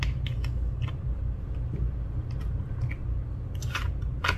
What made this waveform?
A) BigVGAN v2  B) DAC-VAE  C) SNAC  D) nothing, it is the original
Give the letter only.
D